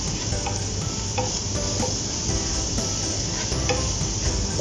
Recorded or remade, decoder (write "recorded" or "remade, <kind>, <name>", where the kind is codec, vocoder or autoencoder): recorded